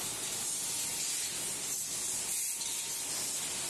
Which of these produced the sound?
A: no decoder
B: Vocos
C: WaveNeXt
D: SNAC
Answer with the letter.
A